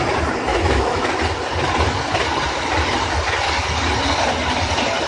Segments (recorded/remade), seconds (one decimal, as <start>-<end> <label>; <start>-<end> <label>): 0.0-0.5 recorded; 0.5-1.1 remade; 1.1-5.1 recorded